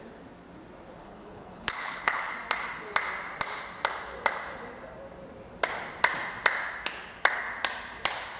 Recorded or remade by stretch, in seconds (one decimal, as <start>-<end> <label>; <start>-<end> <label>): 0.0-1.0 recorded; 1.0-2.3 remade; 2.3-8.4 recorded